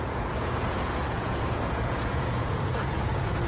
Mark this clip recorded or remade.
remade